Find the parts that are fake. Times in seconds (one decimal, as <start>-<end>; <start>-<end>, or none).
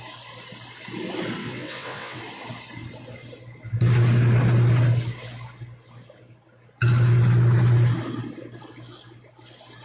1.4-2.2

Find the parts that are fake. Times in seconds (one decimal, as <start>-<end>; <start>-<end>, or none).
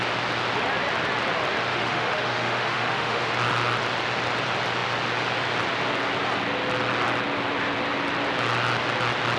1.7-3.3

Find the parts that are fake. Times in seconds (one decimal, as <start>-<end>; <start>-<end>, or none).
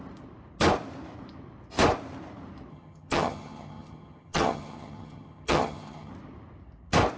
2.7-6.1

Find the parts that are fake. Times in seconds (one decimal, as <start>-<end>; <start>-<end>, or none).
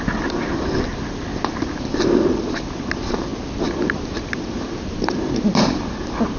none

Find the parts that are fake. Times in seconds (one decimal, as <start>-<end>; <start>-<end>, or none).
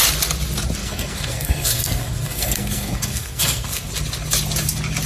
0.8-3.9